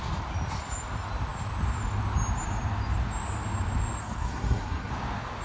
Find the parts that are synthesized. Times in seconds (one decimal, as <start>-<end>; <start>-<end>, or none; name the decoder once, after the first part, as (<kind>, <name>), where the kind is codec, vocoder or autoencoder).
4.0-4.9 (codec, SNAC)